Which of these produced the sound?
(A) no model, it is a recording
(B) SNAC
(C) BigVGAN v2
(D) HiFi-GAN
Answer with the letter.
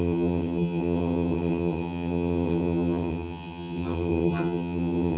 D